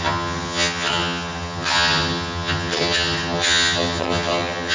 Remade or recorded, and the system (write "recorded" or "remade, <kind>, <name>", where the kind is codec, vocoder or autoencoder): remade, vocoder, HiFi-GAN